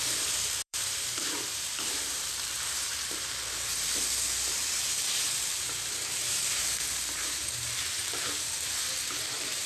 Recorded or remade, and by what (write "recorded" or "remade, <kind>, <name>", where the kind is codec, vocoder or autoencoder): remade, vocoder, BigVGAN v2